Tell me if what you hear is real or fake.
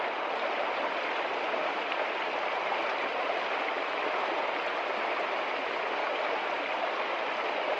real